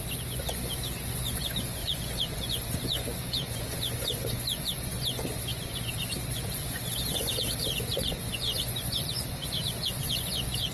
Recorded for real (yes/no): no